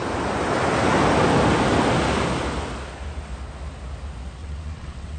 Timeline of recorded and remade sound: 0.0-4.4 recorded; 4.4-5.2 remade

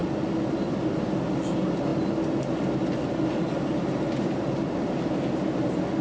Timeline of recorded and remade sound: 0.0-6.0 recorded

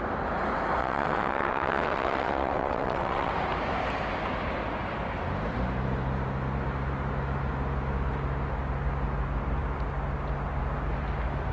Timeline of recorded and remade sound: 0.0-0.8 recorded; 0.8-3.3 remade; 3.3-11.5 recorded

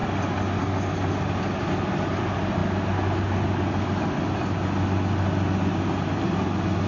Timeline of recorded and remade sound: 0.0-6.9 recorded